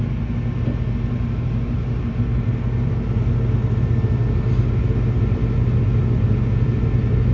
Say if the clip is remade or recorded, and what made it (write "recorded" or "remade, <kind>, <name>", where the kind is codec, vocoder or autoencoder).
recorded